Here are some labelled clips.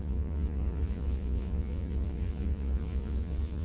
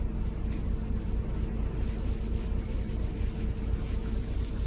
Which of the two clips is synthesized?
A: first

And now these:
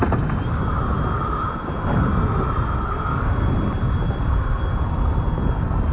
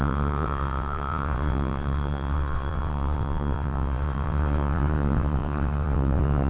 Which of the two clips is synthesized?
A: second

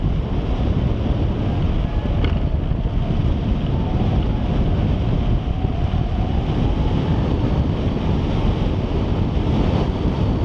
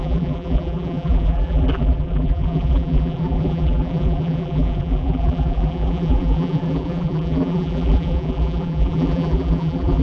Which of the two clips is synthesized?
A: second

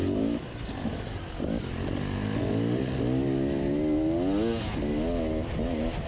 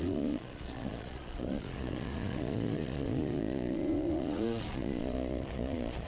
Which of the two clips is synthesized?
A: second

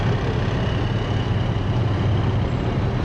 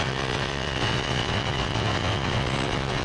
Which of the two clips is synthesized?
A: second